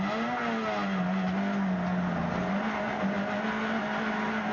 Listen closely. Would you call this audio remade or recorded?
recorded